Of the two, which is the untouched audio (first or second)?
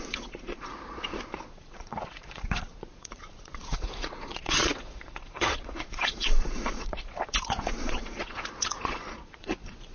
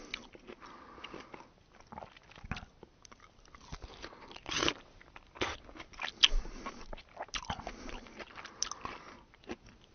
second